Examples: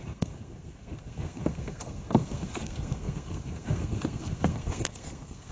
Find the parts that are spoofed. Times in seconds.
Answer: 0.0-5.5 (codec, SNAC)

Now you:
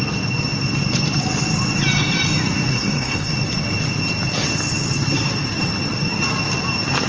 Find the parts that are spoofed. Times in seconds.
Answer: 2.7-3.3 (codec, SNAC)

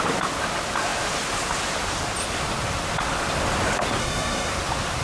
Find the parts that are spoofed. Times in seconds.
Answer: 4.0-4.5 (codec, SNAC)

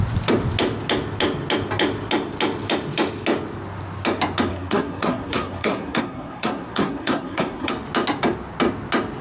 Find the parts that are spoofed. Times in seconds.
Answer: 4.5-7.7 (codec, SNAC)

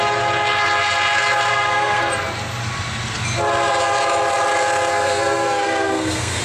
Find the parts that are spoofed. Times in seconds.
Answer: 1.5-2.1 (codec, SNAC); 4.9-6.4

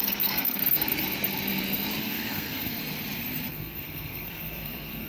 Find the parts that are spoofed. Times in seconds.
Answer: 0.0-0.6 (codec, SNAC); 2.0-2.8; 3.5-5.1